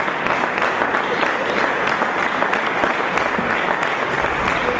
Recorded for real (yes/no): yes